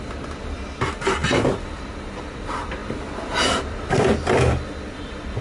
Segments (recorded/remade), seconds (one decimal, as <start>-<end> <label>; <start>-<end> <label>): 0.0-5.4 recorded